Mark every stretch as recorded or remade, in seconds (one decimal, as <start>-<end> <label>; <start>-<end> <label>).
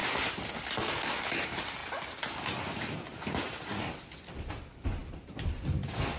0.0-1.2 remade; 1.2-5.0 recorded; 5.0-5.8 remade; 5.8-6.2 recorded